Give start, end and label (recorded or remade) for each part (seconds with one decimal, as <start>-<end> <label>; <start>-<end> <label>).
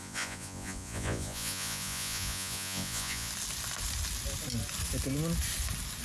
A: 0.0-3.3 remade; 3.3-6.0 recorded